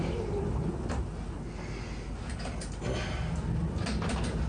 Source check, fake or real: real